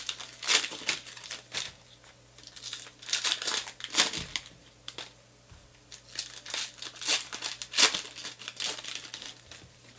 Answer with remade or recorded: recorded